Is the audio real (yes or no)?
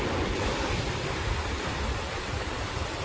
yes